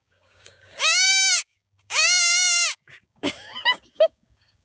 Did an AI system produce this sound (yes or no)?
yes